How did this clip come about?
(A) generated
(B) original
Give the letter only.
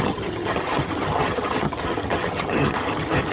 A